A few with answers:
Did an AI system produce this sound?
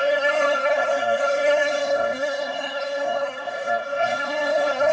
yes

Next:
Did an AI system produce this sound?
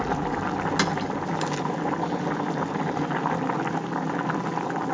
no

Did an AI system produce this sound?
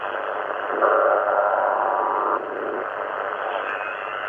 no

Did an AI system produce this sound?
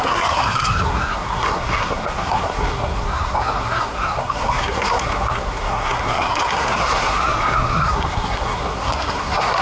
yes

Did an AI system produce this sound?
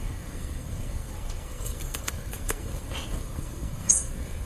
yes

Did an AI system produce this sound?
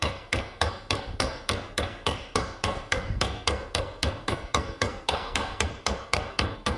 yes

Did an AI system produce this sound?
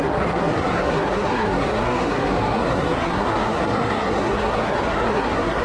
yes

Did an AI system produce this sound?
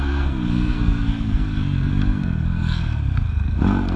yes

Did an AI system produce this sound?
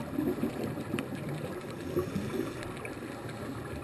no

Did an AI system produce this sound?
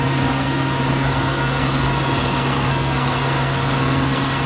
yes